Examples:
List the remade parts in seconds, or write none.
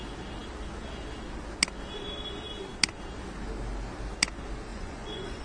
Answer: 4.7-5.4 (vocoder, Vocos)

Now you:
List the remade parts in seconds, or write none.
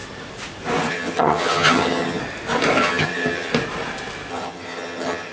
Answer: 0.9-2.2 (vocoder, HiFi-GAN); 2.8-3.5; 4.3-5.3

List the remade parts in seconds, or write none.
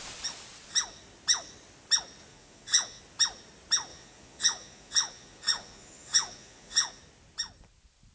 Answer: 2.3-3.0 (vocoder, Vocos); 3.9-7.0